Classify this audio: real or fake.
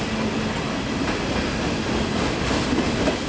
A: real